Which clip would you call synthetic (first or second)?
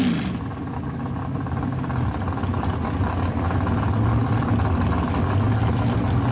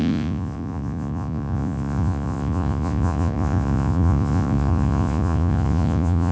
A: second